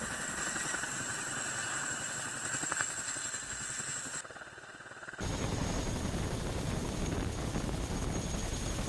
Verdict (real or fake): real